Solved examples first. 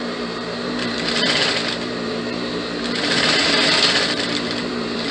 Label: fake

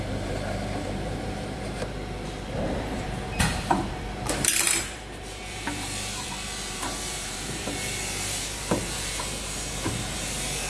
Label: fake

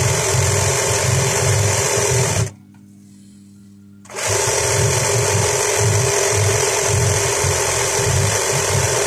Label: real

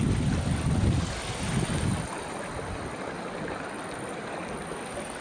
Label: real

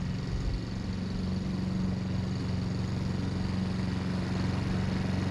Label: real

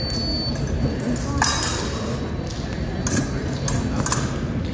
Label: real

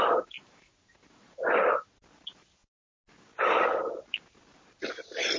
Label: real